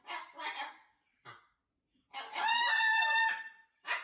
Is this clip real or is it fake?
real